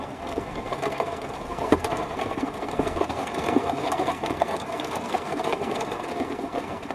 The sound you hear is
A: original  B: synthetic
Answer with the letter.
B